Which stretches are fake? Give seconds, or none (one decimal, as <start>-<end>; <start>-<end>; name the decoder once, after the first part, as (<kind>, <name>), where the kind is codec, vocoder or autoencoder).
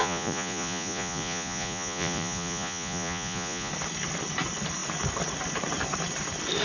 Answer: 0.0-3.7 (vocoder, Vocos)